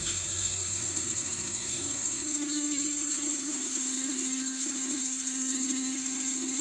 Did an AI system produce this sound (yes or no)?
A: yes